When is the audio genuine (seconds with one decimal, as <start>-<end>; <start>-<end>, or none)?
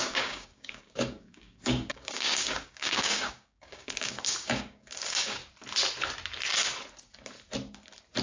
5.4-8.2